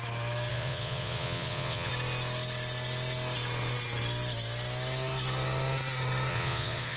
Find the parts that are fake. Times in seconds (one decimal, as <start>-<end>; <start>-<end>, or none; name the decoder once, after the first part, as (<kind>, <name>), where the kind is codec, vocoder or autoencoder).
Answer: 0.5-1.9 (vocoder, Vocos); 6.3-7.0